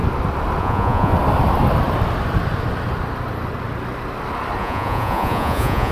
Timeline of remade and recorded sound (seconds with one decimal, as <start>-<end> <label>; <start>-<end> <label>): 0.0-0.6 recorded; 0.6-1.1 remade; 1.1-4.6 recorded; 4.6-5.9 remade